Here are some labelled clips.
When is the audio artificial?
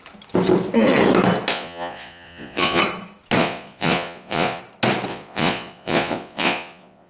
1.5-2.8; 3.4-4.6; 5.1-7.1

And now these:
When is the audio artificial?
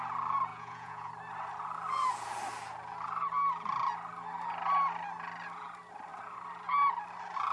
0.5-1.1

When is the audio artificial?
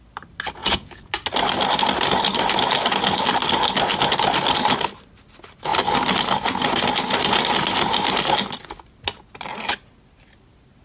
0.6-1.1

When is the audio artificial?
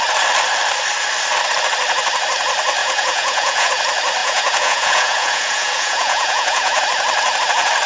2.8-3.7; 4.2-6.8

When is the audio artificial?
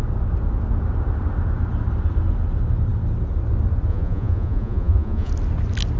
3.9-5.3